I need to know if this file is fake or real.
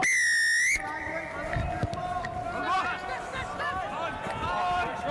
real